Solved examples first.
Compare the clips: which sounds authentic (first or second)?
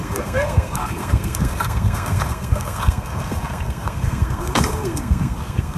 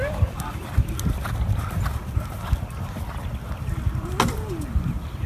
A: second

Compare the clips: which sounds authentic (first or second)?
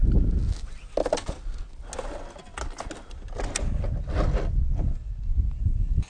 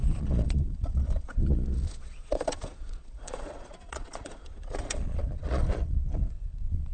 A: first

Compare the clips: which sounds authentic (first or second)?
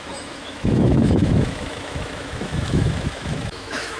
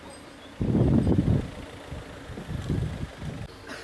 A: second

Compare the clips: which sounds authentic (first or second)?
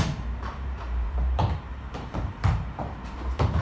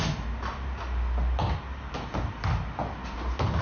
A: second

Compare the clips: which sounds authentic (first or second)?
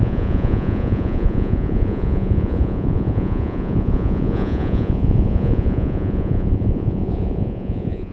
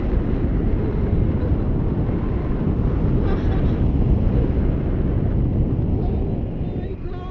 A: second